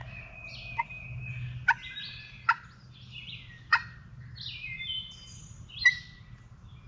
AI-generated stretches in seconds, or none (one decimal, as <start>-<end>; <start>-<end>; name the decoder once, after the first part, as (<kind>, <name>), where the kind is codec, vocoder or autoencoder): none